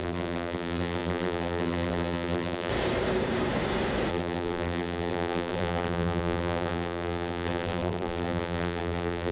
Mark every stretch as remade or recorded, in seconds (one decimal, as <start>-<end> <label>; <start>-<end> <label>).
0.0-2.7 remade; 2.7-4.1 recorded; 4.1-9.3 remade

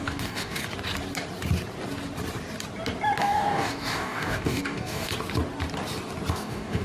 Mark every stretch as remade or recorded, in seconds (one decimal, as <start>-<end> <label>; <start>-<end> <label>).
0.0-0.6 remade; 0.6-3.2 recorded; 3.2-5.1 remade; 5.1-6.3 recorded; 6.3-6.8 remade